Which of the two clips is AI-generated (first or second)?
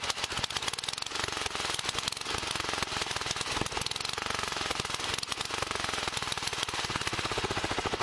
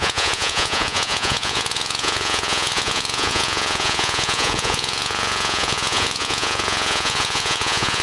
second